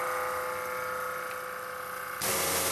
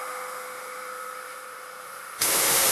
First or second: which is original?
first